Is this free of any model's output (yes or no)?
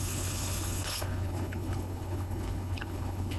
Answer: no